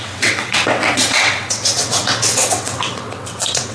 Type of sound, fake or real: fake